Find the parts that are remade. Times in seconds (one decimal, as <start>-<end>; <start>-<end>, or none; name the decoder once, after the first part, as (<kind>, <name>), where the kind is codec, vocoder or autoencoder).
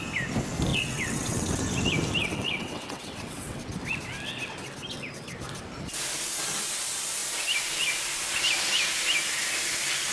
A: 0.7-1.6 (vocoder, WaveNeXt); 2.2-3.6